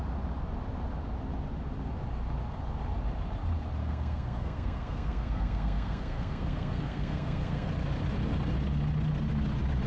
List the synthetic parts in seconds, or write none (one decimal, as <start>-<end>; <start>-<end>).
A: 3.8-7.7